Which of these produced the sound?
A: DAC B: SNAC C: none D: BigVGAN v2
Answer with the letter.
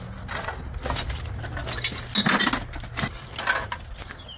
C